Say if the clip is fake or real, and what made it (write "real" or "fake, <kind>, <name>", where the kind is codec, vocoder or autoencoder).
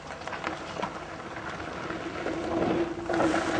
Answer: real